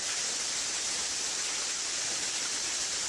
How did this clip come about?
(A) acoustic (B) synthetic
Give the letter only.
A